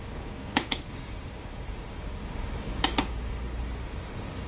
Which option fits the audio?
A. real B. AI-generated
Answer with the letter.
B